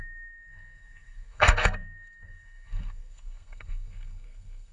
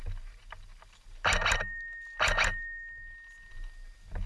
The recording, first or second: second